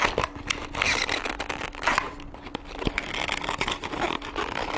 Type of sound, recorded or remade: recorded